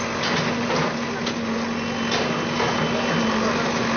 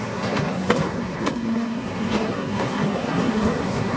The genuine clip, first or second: first